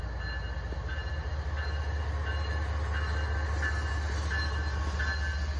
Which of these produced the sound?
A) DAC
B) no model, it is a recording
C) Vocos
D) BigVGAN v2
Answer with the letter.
B